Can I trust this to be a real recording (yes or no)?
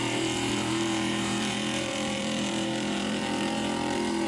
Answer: no